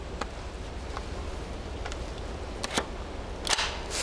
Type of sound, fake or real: real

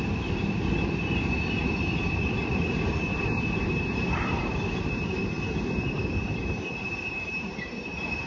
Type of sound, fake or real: fake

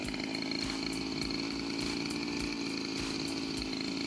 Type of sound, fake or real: real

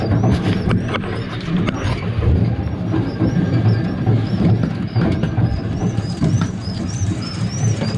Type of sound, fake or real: fake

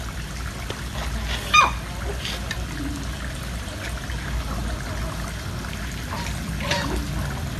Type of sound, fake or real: real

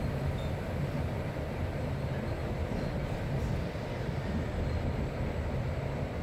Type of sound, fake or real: fake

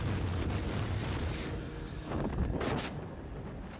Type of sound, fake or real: real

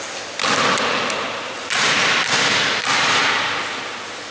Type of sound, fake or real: real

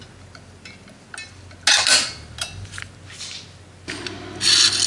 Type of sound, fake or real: real